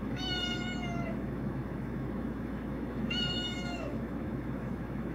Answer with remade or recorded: remade